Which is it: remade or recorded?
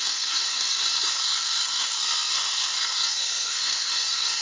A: remade